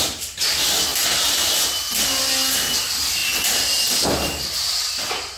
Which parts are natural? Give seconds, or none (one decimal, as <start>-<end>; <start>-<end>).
0.0-5.4